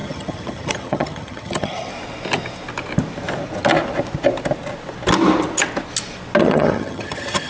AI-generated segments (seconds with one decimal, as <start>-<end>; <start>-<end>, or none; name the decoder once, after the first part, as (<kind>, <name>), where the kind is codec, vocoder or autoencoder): 0.0-1.9 (vocoder, HiFi-GAN); 6.4-7.5